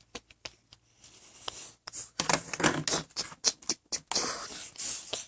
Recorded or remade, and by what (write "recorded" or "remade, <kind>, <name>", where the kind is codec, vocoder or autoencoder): recorded